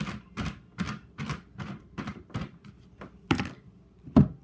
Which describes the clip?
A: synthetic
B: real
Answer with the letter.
B